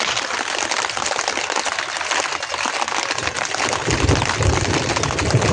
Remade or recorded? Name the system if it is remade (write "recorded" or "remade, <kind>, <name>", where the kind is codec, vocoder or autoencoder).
recorded